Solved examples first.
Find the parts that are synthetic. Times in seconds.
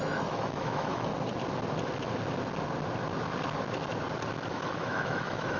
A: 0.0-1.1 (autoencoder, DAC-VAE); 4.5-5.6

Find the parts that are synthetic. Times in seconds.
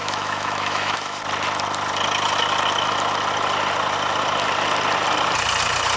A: 0.0-1.2 (autoencoder, DAC-VAE)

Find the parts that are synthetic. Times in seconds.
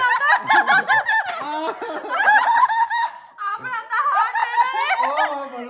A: 2.6-3.3 (autoencoder, DAC-VAE)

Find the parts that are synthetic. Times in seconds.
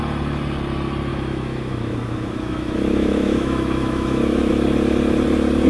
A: 1.1-4.5 (autoencoder, DAC-VAE)